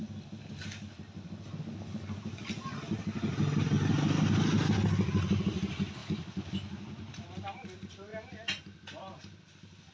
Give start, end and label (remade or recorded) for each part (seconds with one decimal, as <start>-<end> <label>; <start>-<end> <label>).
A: 0.0-9.9 recorded